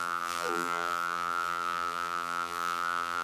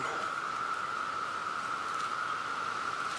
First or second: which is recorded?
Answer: second